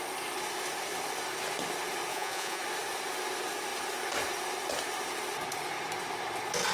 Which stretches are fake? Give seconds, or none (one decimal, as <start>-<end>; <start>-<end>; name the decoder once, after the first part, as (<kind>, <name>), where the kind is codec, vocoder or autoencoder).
2.1-2.6 (vocoder, Vocos)